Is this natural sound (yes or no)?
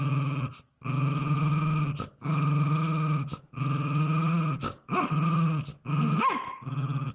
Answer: yes